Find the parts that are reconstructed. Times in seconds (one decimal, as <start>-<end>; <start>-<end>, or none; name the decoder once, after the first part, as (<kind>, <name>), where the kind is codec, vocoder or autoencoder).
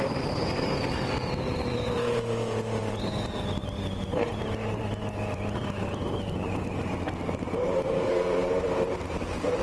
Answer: 0.0-9.6 (vocoder, BigVGAN v2)